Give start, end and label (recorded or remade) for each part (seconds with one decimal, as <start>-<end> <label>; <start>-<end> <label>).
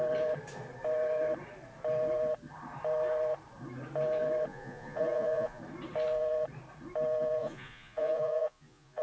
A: 0.0-4.5 recorded; 4.5-5.6 remade; 5.6-7.4 recorded; 7.4-9.0 remade